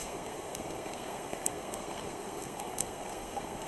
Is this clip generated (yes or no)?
yes